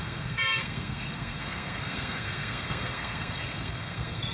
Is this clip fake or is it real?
fake